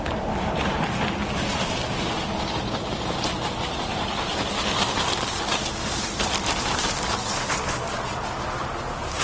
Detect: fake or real real